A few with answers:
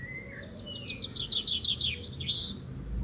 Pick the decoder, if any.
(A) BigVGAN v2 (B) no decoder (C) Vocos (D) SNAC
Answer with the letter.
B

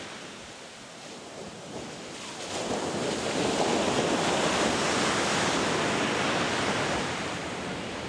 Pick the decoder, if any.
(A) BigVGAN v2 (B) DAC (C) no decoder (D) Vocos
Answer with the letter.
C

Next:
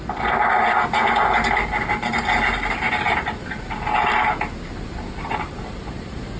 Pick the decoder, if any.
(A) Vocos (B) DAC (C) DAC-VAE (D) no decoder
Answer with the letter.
D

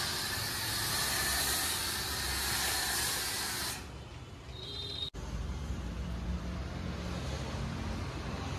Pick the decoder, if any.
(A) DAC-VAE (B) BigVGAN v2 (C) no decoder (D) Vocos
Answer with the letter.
C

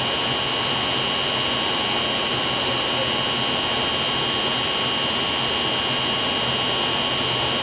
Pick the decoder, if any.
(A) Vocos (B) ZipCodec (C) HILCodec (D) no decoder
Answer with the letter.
D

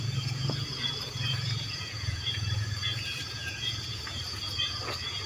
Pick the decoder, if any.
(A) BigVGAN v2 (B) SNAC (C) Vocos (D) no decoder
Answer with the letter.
C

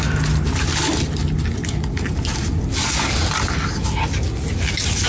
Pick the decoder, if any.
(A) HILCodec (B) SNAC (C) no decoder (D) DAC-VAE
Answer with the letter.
C